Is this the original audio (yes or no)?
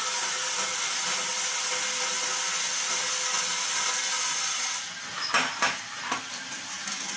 yes